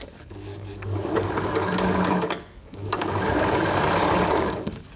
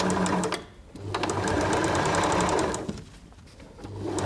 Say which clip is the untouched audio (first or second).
second